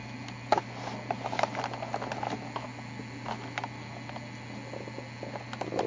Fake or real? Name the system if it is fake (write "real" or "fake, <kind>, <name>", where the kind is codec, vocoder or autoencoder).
real